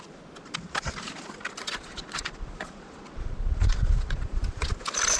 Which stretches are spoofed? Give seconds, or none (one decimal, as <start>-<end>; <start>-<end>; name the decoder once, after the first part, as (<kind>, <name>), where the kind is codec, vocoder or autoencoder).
1.6-4.7 (vocoder, Vocos)